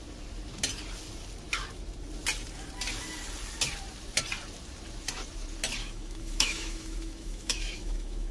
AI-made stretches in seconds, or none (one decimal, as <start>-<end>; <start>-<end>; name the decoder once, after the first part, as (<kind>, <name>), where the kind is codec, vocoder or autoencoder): 5.8-8.3 (autoencoder, DAC-VAE)